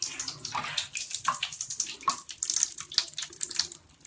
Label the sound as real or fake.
real